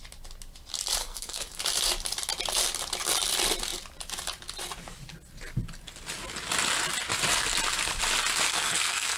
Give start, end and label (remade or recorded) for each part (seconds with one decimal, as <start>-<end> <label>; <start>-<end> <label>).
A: 0.0-1.0 recorded; 1.0-1.6 remade; 1.6-8.5 recorded; 8.5-9.2 remade